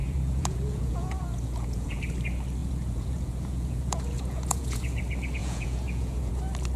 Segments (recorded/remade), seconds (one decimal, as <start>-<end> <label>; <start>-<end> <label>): 0.0-2.0 remade; 2.0-2.6 recorded; 2.6-5.0 remade; 5.0-5.4 recorded; 5.4-6.3 remade; 6.3-6.8 recorded